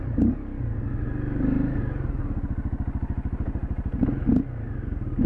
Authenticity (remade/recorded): recorded